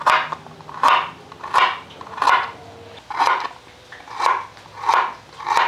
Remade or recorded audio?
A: recorded